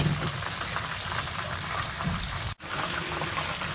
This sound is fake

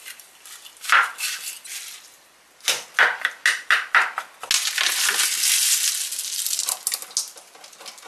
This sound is real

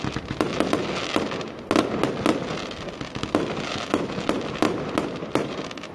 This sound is real